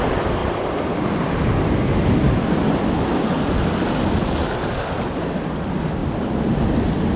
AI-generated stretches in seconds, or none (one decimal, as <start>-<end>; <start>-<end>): none